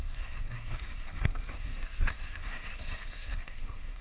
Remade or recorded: remade